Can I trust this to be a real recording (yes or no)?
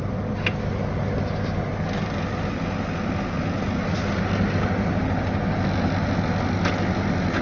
yes